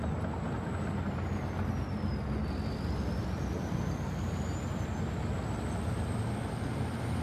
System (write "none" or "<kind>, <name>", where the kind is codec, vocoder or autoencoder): none